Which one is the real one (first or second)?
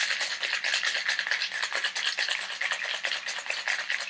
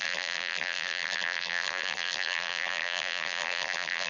first